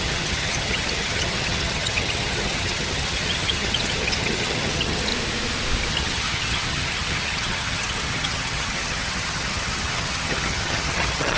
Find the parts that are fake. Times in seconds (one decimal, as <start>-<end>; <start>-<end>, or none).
0.0-5.1; 5.9-11.4